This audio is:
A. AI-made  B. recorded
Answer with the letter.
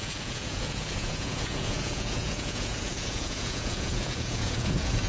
A